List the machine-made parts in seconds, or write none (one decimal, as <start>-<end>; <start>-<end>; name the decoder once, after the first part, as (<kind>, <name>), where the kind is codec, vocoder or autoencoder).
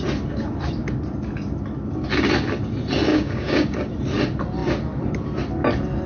3.1-3.9 (codec, DAC)